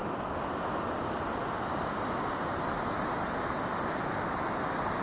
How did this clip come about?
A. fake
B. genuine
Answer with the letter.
B